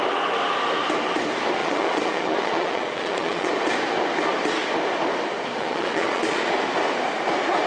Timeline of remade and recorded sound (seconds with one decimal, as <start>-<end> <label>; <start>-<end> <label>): 0.0-1.6 recorded; 1.6-3.5 remade; 3.5-5.5 recorded; 5.5-6.4 remade; 6.4-7.7 recorded